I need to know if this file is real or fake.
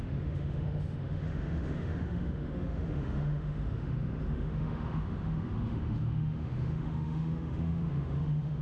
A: fake